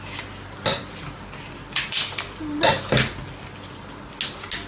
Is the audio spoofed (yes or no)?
no